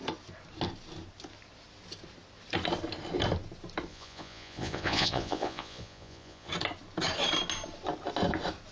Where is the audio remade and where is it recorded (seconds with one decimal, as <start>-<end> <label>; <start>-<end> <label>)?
0.0-3.9 recorded; 3.9-6.5 remade; 6.5-8.7 recorded